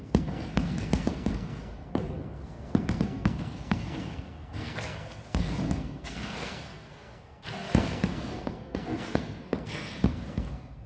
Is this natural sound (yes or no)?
no